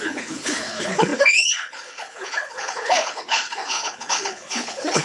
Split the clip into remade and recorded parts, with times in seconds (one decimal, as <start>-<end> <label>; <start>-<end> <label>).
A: 0.0-5.0 remade